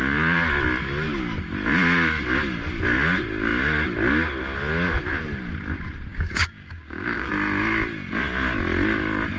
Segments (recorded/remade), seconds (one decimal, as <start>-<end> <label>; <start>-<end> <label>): 0.0-6.1 recorded; 6.1-7.3 remade; 7.3-9.4 recorded